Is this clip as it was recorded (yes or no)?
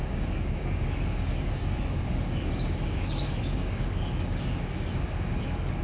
no